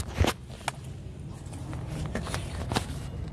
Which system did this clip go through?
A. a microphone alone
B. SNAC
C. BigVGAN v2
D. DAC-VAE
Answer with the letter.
A